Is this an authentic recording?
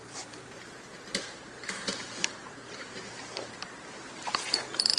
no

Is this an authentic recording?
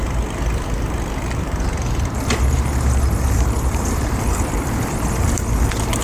no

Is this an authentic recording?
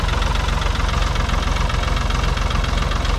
yes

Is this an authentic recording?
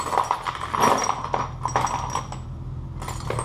yes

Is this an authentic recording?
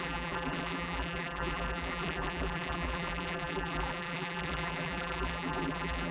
no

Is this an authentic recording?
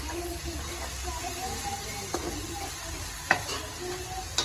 yes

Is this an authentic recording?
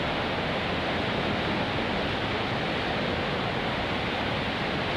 yes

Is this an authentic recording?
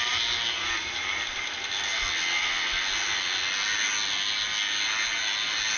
yes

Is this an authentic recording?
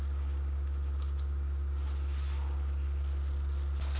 yes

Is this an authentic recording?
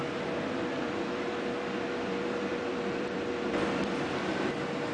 no